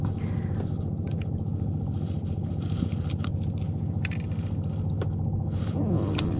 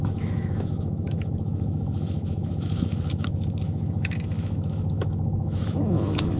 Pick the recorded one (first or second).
first